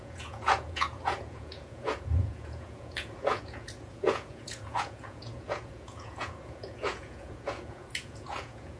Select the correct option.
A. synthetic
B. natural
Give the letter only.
A